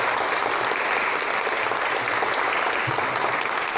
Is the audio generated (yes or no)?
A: no